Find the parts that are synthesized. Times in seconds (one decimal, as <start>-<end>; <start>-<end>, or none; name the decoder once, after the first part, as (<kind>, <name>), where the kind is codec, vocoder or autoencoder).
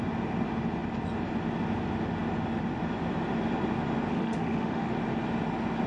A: 4.1-4.9 (autoencoder, DAC-VAE)